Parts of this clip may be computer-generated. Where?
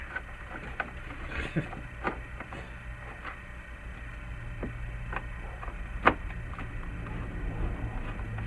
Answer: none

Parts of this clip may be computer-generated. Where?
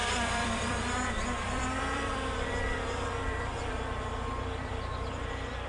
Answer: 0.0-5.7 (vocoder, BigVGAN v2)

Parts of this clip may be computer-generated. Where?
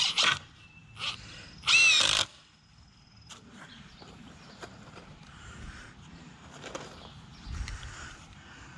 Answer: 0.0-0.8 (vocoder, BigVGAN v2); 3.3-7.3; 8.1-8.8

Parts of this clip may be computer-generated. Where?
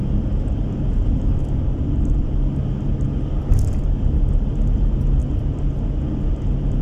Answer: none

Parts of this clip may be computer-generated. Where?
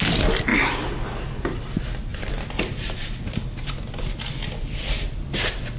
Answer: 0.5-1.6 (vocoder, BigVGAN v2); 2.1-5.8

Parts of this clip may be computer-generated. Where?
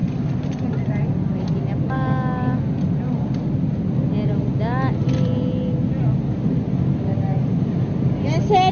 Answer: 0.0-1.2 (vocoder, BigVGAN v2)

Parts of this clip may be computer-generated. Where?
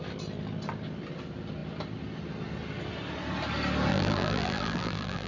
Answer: 3.9-5.3 (vocoder, BigVGAN v2)